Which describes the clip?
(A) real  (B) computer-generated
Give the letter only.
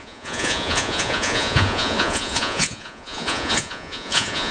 B